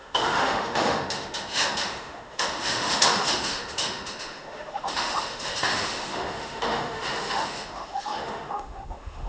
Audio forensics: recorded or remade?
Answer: remade